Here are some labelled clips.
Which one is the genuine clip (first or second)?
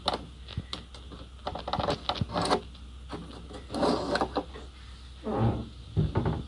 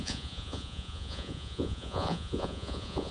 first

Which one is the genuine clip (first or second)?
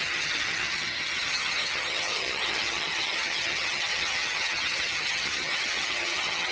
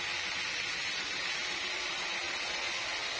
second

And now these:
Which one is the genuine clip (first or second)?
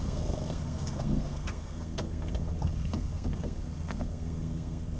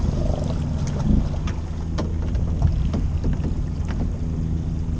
second